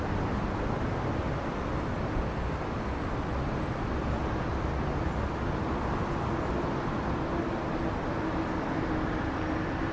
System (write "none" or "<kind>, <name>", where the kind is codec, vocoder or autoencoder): none